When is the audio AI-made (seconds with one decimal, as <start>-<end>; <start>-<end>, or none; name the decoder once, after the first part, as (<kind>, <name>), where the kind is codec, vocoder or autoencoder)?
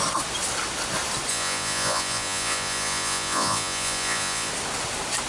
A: 1.3-4.5 (vocoder, Vocos)